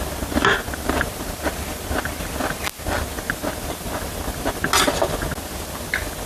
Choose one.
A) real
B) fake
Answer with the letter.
A